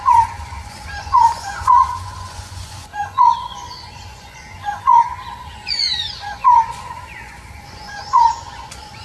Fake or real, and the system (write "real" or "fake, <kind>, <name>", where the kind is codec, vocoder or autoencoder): fake, vocoder, Vocos